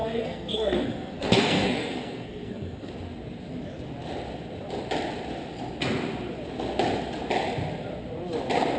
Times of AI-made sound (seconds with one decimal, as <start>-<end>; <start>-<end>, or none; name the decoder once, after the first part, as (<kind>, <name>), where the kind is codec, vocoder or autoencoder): 0.0-2.9 (codec, SNAC)